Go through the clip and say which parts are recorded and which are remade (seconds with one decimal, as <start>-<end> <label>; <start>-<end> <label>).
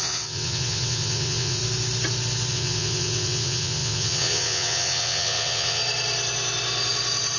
0.0-1.6 remade; 1.6-2.5 recorded; 2.5-5.8 remade; 5.8-7.4 recorded